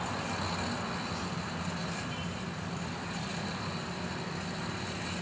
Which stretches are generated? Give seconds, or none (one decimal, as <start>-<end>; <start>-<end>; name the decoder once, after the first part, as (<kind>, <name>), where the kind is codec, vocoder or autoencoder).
1.8-3.7 (vocoder, BigVGAN v2)